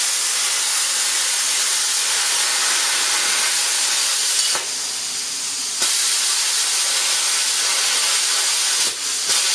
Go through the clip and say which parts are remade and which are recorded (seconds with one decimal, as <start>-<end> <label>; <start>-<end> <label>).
0.0-9.5 recorded